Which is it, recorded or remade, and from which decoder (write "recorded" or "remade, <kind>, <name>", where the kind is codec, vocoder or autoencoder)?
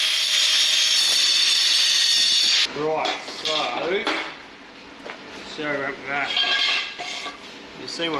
recorded